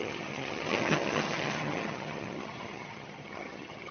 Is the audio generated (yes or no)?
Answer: yes